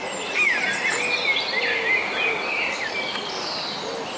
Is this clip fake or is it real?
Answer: real